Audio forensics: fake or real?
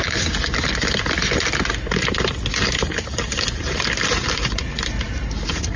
real